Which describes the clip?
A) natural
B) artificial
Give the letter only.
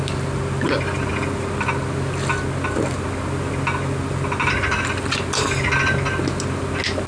A